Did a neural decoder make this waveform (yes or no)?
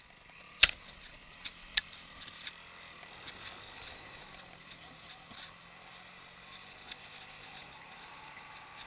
no